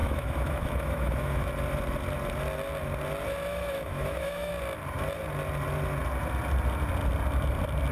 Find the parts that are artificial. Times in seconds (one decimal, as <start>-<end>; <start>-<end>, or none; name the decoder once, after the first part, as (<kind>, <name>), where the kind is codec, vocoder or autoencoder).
0.0-1.5 (autoencoder, DAC-VAE); 3.5-4.5